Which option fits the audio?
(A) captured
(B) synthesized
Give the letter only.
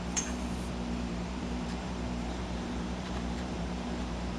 B